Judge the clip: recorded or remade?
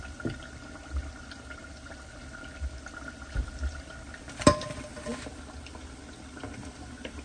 recorded